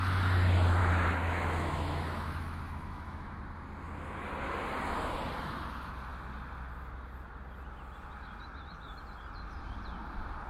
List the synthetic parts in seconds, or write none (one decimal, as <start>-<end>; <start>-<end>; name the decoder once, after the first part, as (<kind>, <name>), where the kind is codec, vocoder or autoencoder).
0.8-3.4 (autoencoder, DAC-VAE)